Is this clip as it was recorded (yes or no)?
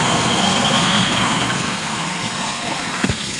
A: no